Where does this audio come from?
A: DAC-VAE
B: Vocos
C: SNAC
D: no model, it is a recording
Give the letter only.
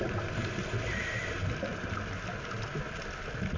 D